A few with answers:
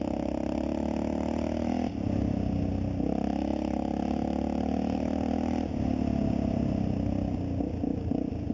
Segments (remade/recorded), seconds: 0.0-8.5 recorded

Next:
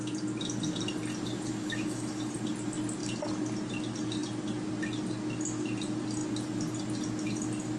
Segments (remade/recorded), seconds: 0.0-1.6 recorded; 1.6-2.3 remade; 2.3-7.8 recorded

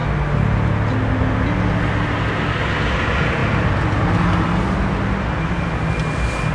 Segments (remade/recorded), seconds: 0.0-6.5 recorded